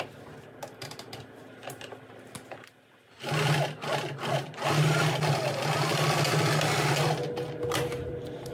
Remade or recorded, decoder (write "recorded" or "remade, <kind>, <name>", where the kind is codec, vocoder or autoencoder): recorded